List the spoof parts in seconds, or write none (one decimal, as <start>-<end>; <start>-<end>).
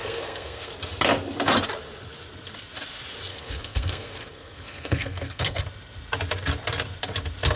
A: 0.0-0.7; 3.3-5.6